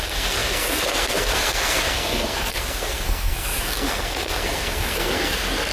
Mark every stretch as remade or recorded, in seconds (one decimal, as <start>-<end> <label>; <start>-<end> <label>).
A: 0.0-5.7 remade